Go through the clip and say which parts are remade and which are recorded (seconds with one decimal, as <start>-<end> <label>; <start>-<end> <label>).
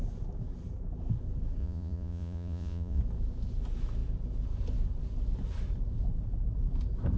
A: 0.0-1.6 recorded; 1.6-3.0 remade; 3.0-7.2 recorded